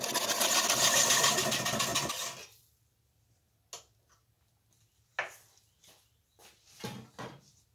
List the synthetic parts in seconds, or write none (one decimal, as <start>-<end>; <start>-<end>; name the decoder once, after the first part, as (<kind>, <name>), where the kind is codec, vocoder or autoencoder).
none